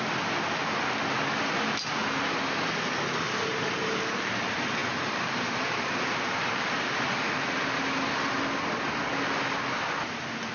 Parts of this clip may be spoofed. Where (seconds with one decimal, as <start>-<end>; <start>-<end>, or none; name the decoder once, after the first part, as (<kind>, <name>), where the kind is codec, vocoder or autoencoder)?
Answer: none